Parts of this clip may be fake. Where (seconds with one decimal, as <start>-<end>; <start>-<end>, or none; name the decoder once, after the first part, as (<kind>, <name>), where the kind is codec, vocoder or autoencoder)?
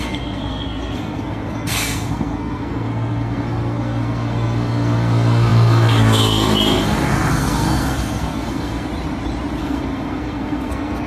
0.0-8.9 (codec, SNAC); 9.6-11.1